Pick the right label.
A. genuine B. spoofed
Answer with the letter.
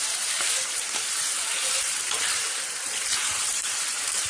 B